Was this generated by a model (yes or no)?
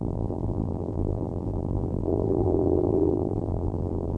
yes